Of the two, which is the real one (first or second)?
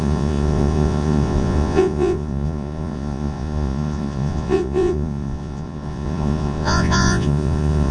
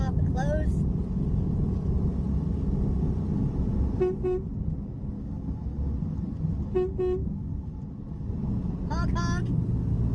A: second